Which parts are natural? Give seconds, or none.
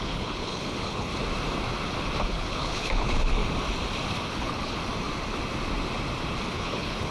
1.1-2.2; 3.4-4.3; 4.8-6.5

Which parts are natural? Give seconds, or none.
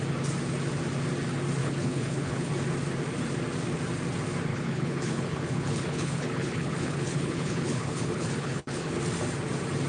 0.0-1.6; 2.5-4.5; 9.0-9.9